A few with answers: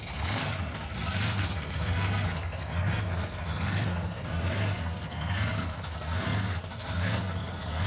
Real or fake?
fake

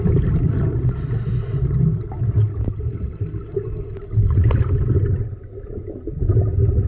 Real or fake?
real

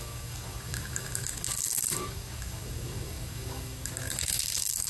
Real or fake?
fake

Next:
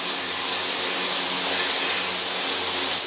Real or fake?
real